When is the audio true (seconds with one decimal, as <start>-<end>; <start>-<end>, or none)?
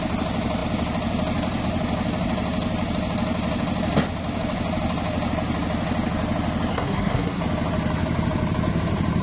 0.0-6.7; 7.4-9.2